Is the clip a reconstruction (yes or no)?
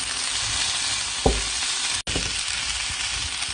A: no